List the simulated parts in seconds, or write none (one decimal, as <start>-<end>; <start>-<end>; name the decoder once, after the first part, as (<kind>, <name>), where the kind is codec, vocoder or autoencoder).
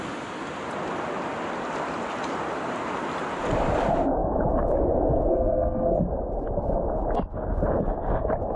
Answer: 5.3-6.0 (codec, SNAC)